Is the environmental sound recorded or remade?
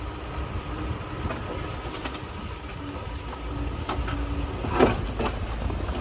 recorded